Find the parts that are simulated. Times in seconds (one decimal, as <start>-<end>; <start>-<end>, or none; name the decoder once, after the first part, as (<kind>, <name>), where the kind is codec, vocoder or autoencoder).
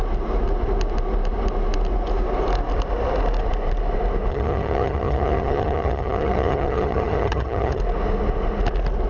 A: 4.3-7.8 (vocoder, HiFi-GAN)